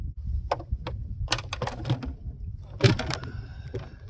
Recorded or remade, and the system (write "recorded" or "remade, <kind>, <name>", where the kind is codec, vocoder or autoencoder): recorded